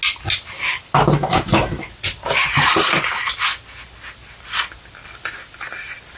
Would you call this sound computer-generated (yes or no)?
no